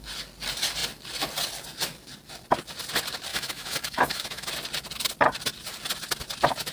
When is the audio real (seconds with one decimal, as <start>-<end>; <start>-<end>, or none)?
0.0-3.3; 4.5-6.7